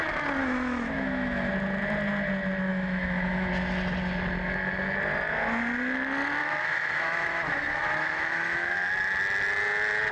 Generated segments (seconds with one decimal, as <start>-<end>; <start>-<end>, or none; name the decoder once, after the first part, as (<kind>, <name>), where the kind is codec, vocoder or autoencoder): 0.4-1.5 (autoencoder, DAC-VAE); 2.7-3.5; 6.4-8.9